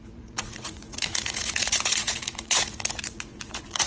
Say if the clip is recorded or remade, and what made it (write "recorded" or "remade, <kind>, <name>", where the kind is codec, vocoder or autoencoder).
remade, vocoder, Vocos